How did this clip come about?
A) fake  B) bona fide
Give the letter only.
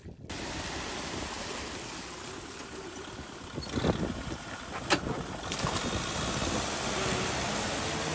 B